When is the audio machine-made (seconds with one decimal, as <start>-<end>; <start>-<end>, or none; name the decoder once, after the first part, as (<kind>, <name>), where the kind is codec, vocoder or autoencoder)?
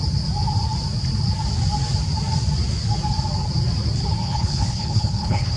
4.2-5.6 (codec, HILCodec)